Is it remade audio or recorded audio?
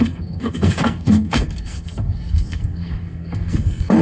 remade